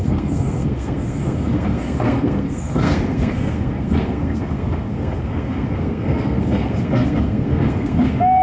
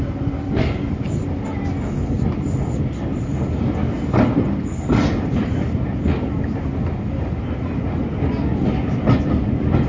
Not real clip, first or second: first